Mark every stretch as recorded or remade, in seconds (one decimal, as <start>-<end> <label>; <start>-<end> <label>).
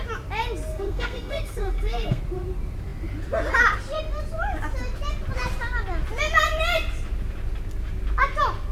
0.0-0.7 recorded; 0.7-2.2 remade; 2.2-8.7 recorded